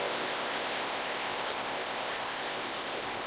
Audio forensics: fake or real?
fake